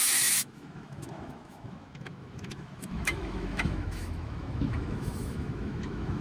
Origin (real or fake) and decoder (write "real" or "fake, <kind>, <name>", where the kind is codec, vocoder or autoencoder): fake, autoencoder, DAC-VAE